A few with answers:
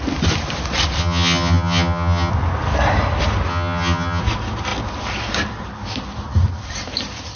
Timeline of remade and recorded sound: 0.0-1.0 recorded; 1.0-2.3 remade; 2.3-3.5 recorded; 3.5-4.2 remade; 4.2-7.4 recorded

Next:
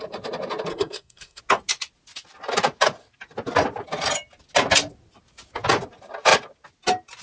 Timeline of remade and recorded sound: 0.0-0.7 recorded; 0.7-1.4 remade; 1.4-7.2 recorded

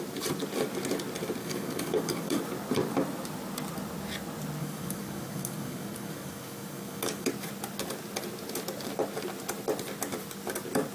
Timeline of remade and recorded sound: 0.0-1.4 recorded; 1.4-2.4 remade; 2.4-4.6 recorded; 4.6-7.3 remade; 7.3-10.9 recorded